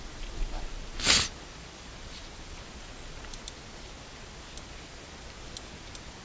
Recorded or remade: recorded